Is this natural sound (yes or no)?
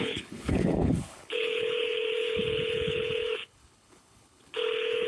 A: no